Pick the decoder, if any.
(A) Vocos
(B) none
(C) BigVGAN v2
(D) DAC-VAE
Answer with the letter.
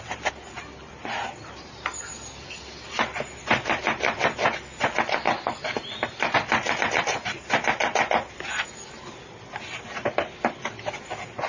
B